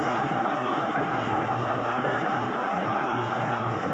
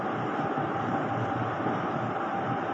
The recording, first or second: second